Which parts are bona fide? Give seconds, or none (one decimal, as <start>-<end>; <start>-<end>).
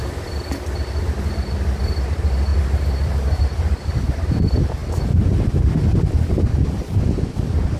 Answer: 0.0-7.8